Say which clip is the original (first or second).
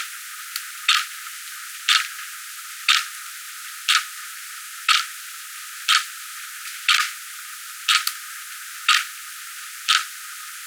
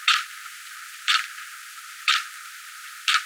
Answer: first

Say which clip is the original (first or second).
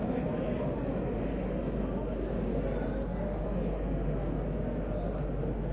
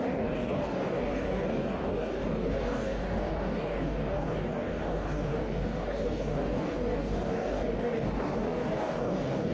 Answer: first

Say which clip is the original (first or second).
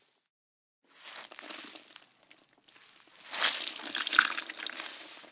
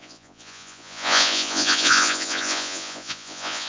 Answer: first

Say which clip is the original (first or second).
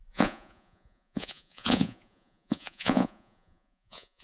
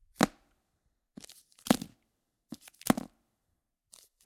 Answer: second